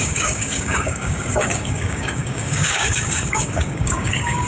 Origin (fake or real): fake